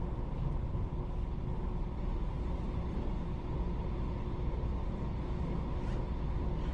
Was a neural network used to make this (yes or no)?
no